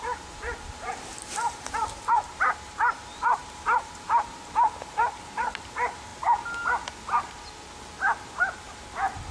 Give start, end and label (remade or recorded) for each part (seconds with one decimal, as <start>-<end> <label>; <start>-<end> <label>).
0.0-6.1 remade; 6.1-8.3 recorded; 8.3-9.3 remade